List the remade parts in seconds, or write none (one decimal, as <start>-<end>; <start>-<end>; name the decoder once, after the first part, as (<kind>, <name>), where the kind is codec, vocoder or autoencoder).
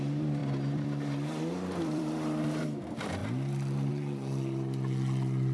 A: 0.4-2.6 (vocoder, BigVGAN v2)